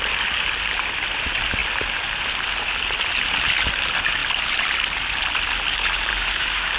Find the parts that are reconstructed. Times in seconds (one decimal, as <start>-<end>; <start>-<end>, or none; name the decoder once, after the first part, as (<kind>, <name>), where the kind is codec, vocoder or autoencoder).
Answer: 6.1-6.8 (codec, DAC)